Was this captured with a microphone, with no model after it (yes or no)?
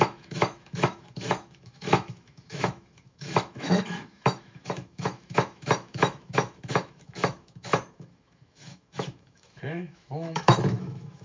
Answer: no